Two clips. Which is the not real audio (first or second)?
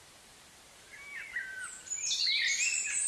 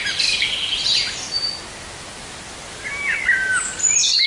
first